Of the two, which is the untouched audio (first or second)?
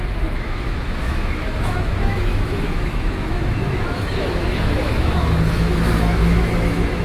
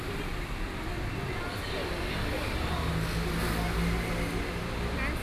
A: second